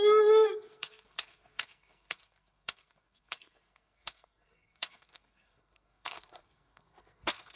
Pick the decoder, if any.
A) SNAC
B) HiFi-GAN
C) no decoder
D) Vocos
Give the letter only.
A